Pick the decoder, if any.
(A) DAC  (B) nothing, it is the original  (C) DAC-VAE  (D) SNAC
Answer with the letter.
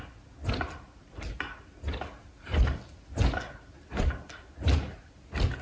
B